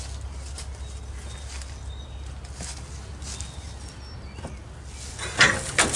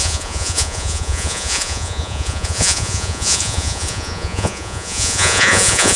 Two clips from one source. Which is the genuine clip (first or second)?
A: first